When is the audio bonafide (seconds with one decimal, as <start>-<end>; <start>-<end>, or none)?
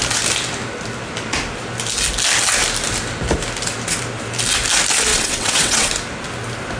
0.0-5.1; 5.9-6.8